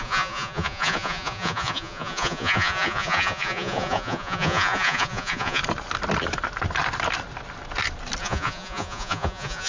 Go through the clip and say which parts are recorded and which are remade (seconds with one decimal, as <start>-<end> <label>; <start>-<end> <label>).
0.0-5.6 remade; 5.6-8.2 recorded; 8.2-9.7 remade